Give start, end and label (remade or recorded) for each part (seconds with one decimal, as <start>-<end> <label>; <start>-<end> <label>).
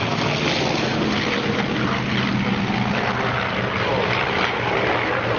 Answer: 0.0-5.4 recorded